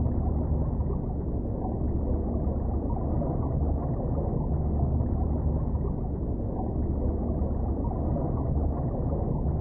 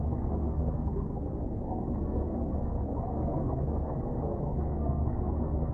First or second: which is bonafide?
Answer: first